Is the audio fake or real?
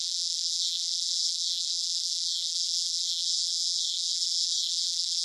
fake